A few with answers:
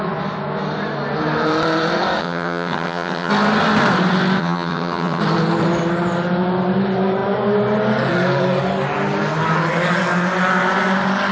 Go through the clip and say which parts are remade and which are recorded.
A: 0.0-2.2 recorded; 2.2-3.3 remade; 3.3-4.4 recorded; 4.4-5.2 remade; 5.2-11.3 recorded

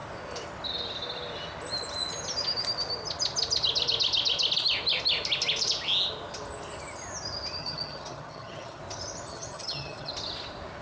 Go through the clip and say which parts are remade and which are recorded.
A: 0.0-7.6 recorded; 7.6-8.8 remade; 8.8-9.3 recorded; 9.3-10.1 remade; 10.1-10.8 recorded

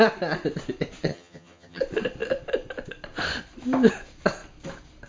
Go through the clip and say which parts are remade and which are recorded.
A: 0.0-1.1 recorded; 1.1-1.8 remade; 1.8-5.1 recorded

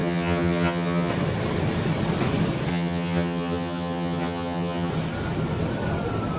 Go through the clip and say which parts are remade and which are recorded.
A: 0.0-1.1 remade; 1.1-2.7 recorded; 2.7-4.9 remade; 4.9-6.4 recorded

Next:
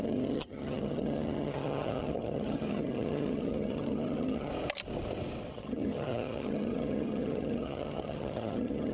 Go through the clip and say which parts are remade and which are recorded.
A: 0.0-4.5 remade; 4.5-5.5 recorded; 5.5-8.9 remade

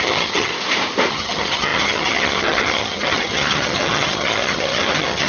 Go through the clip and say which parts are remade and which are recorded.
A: 0.0-0.5 remade; 0.5-1.1 recorded; 1.1-5.3 remade

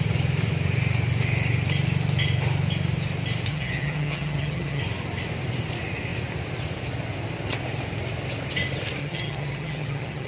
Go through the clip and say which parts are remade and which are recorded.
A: 0.0-3.5 recorded; 3.5-4.8 remade; 4.8-9.0 recorded; 9.0-10.3 remade

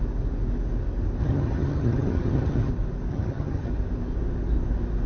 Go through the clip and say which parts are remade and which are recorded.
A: 0.0-1.2 recorded; 1.2-2.7 remade; 2.7-3.1 recorded; 3.1-3.7 remade; 3.7-5.1 recorded